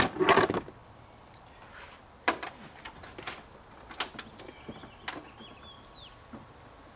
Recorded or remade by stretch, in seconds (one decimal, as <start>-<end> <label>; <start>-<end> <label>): 0.0-0.8 recorded; 0.8-3.6 remade; 3.6-4.8 recorded; 4.8-6.4 remade; 6.4-7.0 recorded